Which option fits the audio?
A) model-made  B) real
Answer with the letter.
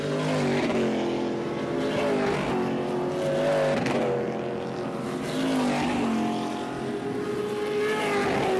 B